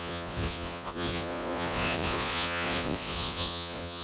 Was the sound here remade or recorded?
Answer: remade